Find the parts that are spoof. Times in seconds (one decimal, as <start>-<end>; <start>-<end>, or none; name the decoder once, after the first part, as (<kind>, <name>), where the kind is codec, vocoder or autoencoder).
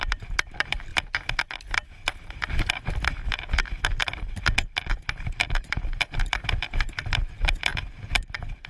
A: 0.0-0.9 (vocoder, BigVGAN v2); 1.9-8.7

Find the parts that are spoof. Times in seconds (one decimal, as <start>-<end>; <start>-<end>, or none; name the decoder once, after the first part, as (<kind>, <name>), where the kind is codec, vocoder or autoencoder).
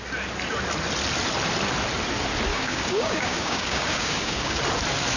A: 2.5-4.6 (codec, DAC)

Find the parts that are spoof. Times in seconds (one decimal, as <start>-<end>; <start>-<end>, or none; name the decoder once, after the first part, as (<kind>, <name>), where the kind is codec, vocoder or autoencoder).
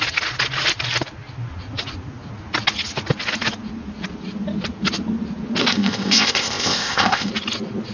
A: 5.6-7.3 (codec, ZipCodec)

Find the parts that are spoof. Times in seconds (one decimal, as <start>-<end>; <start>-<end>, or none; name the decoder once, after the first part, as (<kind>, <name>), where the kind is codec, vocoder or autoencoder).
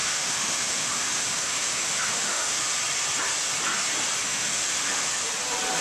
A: 0.0-2.7 (autoencoder, DAC-VAE); 4.2-5.3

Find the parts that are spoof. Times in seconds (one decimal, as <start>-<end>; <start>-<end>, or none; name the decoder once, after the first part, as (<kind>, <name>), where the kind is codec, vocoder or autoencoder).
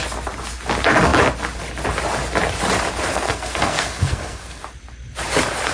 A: 3.1-4.6 (codec, SNAC)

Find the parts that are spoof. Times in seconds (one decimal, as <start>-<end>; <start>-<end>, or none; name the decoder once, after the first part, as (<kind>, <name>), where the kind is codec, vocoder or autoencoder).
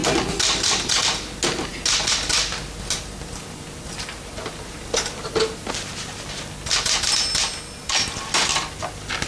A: none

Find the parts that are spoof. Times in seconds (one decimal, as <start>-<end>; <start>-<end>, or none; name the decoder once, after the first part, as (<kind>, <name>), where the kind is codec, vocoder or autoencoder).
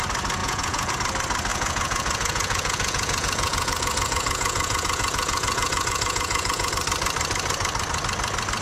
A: 0.4-0.9 (vocoder, Vocos); 1.5-6.7